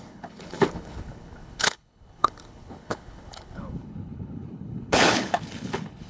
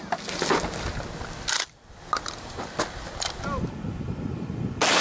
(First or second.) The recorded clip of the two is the second